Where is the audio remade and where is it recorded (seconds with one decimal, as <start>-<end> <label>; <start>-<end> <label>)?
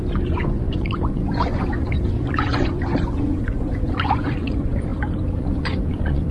0.0-4.9 remade; 4.9-5.4 recorded; 5.4-6.3 remade